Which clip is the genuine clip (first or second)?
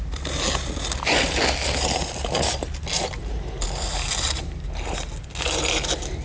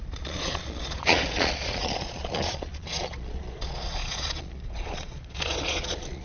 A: first